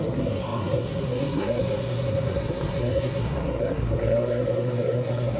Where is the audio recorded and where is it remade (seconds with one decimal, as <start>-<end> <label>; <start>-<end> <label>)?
0.0-5.4 remade